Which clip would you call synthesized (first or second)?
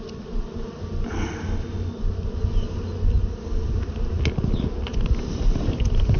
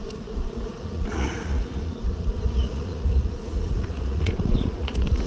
second